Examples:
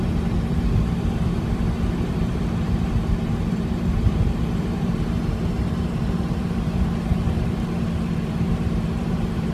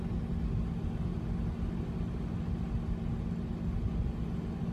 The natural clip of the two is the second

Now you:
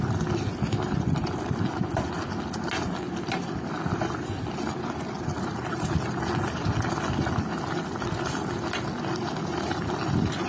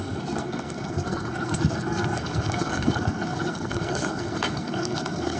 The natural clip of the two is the first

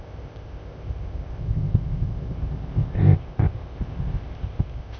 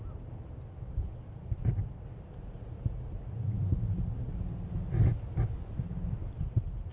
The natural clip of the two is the second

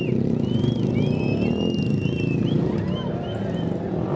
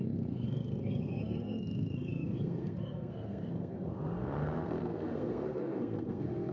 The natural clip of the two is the first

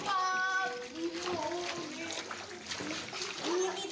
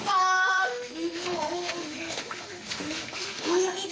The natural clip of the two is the first